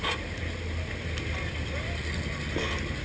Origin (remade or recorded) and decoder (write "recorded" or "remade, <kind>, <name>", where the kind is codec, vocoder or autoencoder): recorded